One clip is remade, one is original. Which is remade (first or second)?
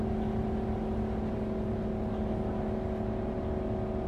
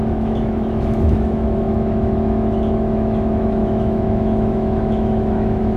second